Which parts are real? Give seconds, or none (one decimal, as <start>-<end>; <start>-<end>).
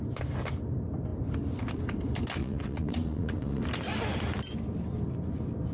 0.0-2.4; 3.6-5.7